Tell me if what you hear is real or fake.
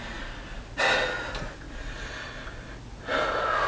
real